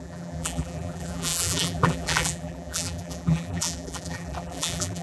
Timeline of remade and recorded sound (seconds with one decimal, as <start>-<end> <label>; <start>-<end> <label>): 0.0-5.0 remade